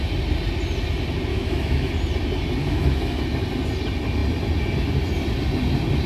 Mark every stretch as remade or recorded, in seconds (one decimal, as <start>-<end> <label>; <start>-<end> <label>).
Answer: 0.0-1.3 recorded; 1.3-1.9 remade; 1.9-2.6 recorded; 2.6-3.2 remade; 3.2-6.1 recorded